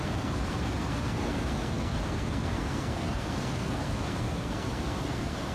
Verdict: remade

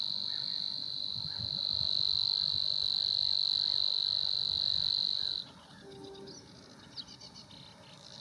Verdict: recorded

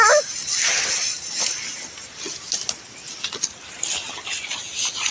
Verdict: recorded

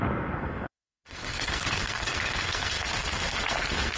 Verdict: remade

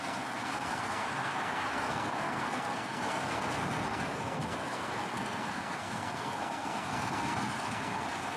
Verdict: remade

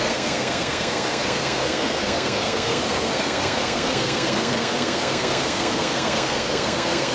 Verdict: remade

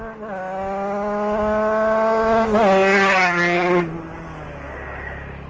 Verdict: recorded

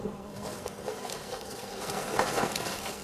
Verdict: remade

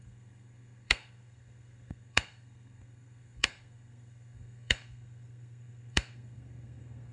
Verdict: remade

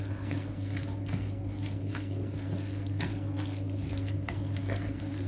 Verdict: remade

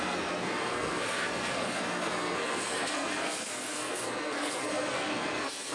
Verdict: remade